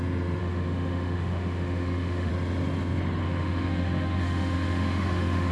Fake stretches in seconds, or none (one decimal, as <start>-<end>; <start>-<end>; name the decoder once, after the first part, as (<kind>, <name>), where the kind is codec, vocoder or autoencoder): 0.4-2.3 (autoencoder, DAC-VAE); 3.2-5.5